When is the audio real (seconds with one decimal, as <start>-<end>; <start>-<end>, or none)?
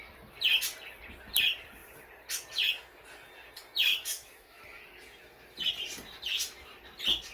0.0-3.9; 4.6-7.3